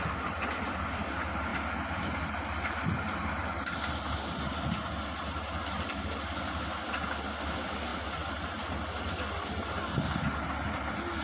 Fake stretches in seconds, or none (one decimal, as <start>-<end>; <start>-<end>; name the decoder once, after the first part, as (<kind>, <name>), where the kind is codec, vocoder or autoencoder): none